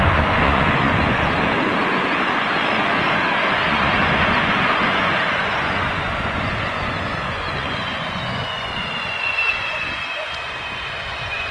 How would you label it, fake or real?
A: fake